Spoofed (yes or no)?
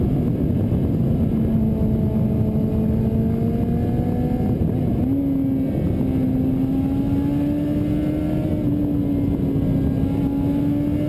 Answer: no